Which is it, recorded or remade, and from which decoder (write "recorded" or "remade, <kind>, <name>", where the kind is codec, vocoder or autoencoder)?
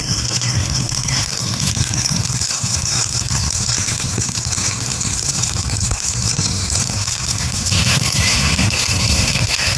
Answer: remade, codec, SNAC